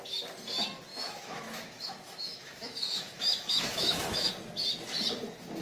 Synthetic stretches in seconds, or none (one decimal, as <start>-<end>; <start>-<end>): 0.9-4.3